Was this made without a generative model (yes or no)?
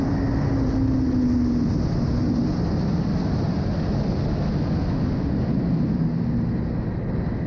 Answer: yes